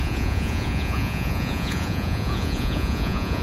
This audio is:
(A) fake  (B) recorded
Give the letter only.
A